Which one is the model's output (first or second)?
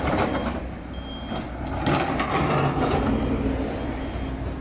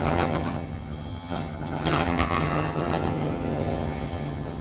second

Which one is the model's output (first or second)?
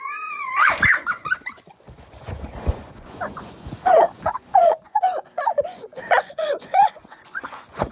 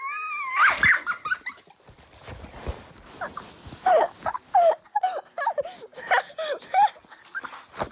first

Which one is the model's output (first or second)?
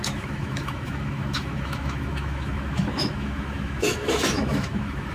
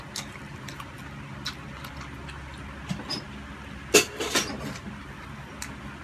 first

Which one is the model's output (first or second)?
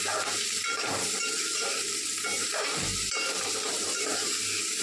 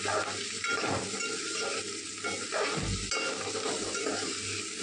first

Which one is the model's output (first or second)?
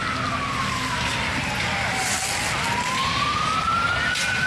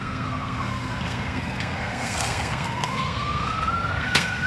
second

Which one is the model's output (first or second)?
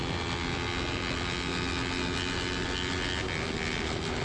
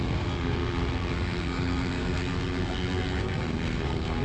second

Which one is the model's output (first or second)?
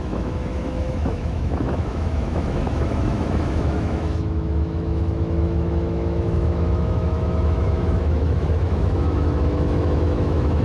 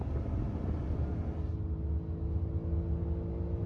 first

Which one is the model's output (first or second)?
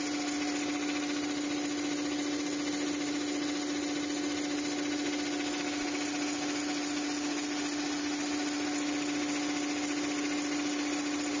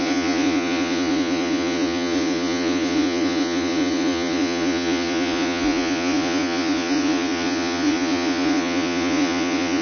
second